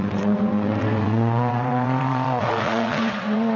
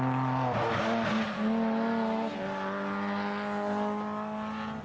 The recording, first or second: second